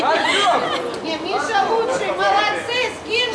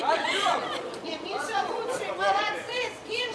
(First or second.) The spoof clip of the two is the second